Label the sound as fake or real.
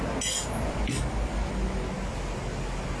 real